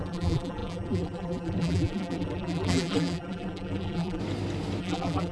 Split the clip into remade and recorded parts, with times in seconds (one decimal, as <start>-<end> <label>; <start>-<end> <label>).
0.0-4.2 remade; 4.2-4.8 recorded; 4.8-5.3 remade